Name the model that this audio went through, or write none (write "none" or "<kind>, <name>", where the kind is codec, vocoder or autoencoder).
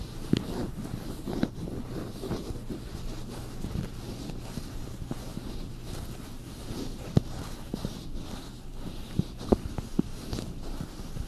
none